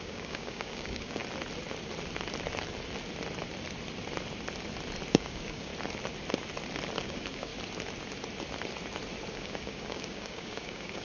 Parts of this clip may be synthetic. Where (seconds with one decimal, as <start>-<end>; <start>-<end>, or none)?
0.0-1.2; 5.1-5.7; 7.0-7.5; 9.3-11.0